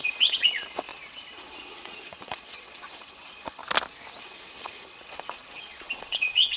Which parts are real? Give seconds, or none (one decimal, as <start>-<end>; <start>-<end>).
3.6-4.2